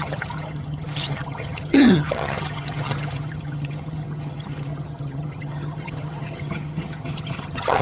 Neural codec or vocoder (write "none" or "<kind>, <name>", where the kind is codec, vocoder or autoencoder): vocoder, HiFi-GAN